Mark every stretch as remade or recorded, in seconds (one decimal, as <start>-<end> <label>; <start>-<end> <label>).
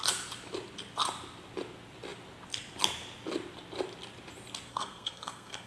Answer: 0.0-4.7 recorded; 4.7-5.7 remade